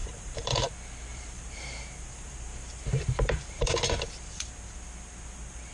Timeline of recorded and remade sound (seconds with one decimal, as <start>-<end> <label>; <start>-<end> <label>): 0.0-0.7 remade; 0.7-1.1 recorded; 1.1-4.5 remade; 4.5-5.7 recorded